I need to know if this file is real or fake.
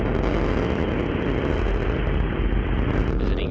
real